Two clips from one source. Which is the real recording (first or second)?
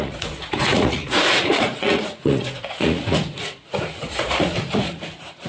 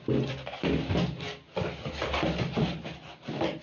second